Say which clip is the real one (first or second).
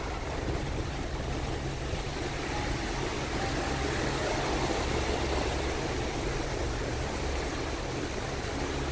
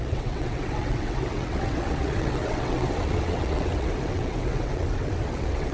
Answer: first